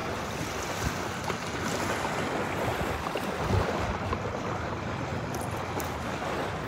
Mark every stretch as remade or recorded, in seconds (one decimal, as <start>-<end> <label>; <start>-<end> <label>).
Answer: 0.0-1.6 recorded; 1.6-6.7 remade

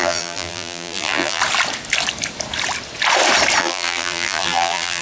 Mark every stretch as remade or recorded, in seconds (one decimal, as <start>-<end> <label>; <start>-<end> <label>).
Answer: 0.0-1.4 remade; 1.4-3.6 recorded; 3.6-5.0 remade

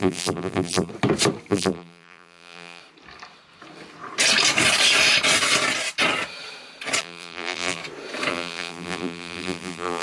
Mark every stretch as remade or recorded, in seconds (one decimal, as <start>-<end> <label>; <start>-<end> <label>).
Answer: 0.0-0.9 remade; 0.9-1.5 recorded; 1.5-2.8 remade; 2.8-7.0 recorded; 7.0-7.8 remade; 7.8-8.3 recorded; 8.3-10.0 remade

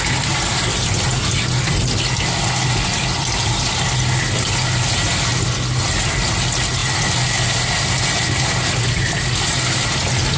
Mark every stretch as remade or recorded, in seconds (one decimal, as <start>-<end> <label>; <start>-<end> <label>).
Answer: 0.0-10.4 recorded

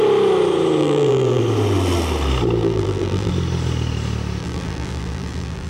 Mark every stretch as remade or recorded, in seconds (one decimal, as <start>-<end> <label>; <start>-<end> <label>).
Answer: 0.0-0.8 recorded; 0.8-1.4 remade; 1.4-2.6 recorded; 2.6-3.3 remade; 3.3-4.4 recorded; 4.4-5.7 remade

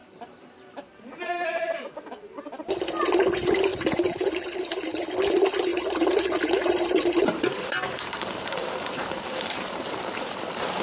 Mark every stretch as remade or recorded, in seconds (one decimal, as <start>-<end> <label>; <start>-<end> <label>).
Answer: 0.0-2.4 remade; 2.4-3.7 recorded; 3.7-5.1 remade; 5.1-5.7 recorded; 5.7-10.8 remade